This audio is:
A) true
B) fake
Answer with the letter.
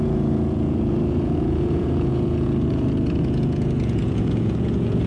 B